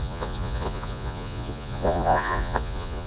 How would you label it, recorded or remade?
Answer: remade